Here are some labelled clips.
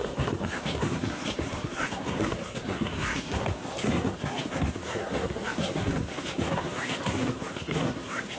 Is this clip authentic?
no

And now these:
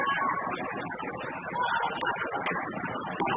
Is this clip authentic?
yes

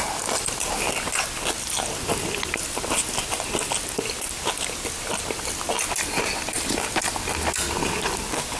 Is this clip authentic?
yes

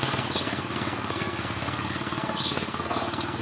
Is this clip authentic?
no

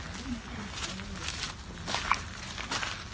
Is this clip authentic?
yes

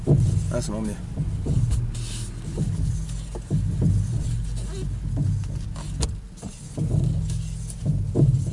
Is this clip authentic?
yes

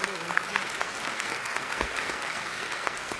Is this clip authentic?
no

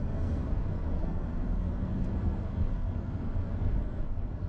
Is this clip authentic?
no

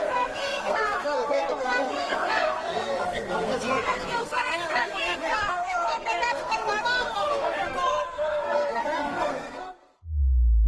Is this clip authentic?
no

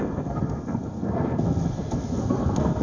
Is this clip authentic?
no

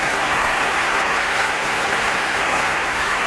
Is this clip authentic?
no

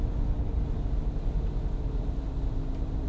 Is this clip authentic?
yes